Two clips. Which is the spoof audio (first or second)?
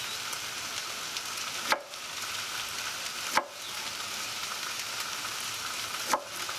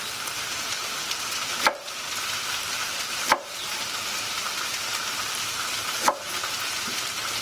second